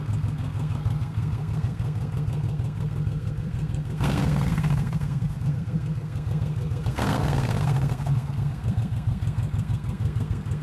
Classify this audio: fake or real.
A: fake